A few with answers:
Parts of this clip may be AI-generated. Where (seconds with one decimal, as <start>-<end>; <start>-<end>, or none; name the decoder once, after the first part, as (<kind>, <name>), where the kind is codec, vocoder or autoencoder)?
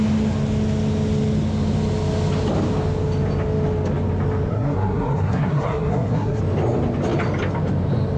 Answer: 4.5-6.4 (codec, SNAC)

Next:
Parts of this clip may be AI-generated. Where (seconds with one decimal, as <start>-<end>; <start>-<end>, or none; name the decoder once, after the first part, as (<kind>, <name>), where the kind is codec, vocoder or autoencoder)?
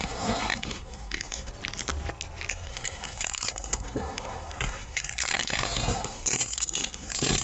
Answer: 0.0-1.5 (codec, SNAC); 2.5-7.4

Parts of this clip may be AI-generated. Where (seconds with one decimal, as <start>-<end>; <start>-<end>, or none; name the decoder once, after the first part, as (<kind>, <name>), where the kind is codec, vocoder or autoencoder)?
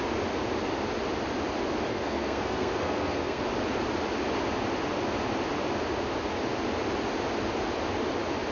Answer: 1.9-3.4 (codec, SNAC)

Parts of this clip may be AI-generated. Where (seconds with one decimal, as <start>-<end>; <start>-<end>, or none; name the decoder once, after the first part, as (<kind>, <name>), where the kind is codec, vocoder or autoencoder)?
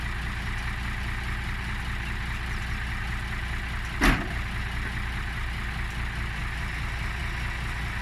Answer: none